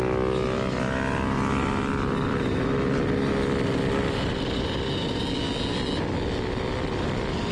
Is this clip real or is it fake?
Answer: real